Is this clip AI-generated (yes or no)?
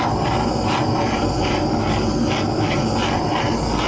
no